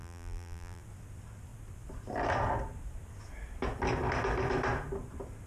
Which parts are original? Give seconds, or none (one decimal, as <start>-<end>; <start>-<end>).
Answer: 0.8-5.5